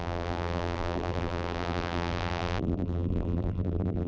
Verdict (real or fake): fake